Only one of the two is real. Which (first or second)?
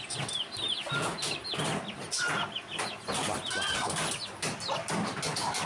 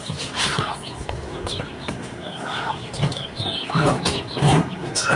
first